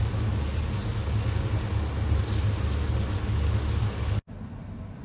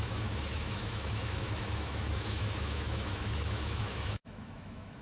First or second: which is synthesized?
second